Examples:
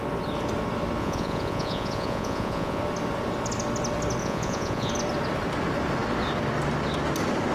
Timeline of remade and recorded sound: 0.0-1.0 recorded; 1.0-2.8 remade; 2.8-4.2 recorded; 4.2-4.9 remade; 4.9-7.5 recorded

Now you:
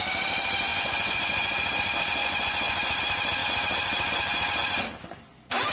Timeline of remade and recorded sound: 0.0-0.7 recorded; 0.7-1.7 remade; 1.7-2.2 recorded; 2.2-3.0 remade; 3.0-5.7 recorded

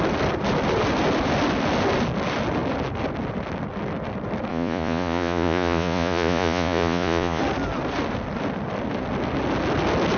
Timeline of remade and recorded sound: 0.0-4.5 recorded; 4.5-7.4 remade; 7.4-10.2 recorded

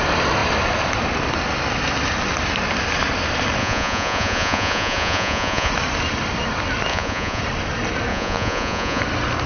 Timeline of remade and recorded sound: 0.0-3.6 recorded; 3.6-5.7 remade; 5.7-6.9 recorded; 6.9-7.4 remade; 7.4-8.1 recorded; 8.1-9.0 remade; 9.0-9.5 recorded

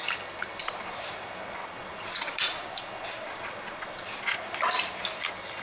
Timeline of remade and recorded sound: 0.0-0.6 recorded; 0.6-1.1 remade; 1.1-1.6 recorded; 1.6-4.4 remade; 4.4-5.6 recorded

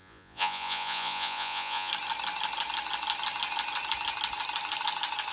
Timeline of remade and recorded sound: 0.0-1.9 remade; 1.9-5.3 recorded

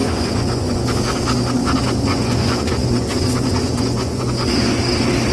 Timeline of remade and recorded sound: 0.0-0.9 remade; 0.9-2.1 recorded; 2.1-4.8 remade; 4.8-5.3 recorded

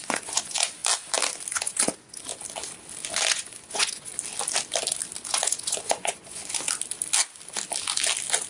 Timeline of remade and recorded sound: 0.0-0.8 remade; 0.8-1.5 recorded; 1.5-2.3 remade; 2.3-3.3 recorded; 3.3-4.1 remade; 4.1-5.3 recorded; 5.3-6.4 remade; 6.4-8.5 recorded